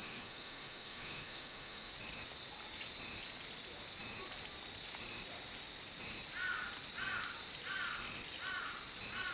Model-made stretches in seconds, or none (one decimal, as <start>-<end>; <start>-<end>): 0.0-1.9